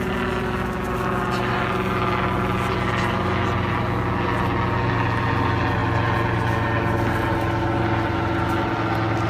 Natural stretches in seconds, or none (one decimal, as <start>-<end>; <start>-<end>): 0.0-9.3